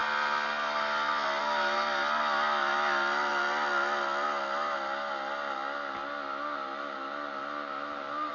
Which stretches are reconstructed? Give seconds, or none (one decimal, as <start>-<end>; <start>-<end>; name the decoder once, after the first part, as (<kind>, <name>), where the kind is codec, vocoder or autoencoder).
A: none